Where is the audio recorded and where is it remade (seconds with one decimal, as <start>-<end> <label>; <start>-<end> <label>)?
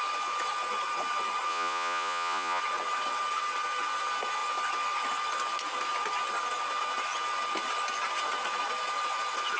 0.0-1.5 recorded; 1.5-2.6 remade; 2.6-9.6 recorded